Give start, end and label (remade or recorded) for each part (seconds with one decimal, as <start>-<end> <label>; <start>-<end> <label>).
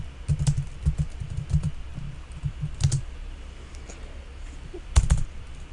0.0-5.7 recorded